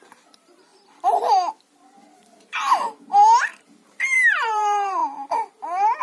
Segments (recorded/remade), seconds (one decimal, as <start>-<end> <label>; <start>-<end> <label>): 0.0-0.7 remade; 0.7-3.6 recorded; 3.6-5.0 remade; 5.0-6.0 recorded